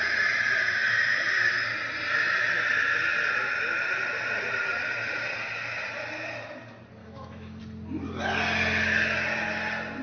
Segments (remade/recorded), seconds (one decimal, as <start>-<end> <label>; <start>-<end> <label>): 0.0-7.0 recorded; 7.0-7.6 remade; 7.6-10.0 recorded